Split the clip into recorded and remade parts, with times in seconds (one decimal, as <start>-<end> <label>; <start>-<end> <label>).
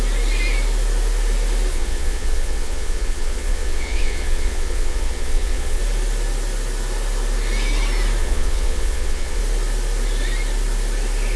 0.0-1.7 recorded; 1.7-5.8 remade; 5.8-8.2 recorded; 8.2-9.4 remade; 9.4-11.4 recorded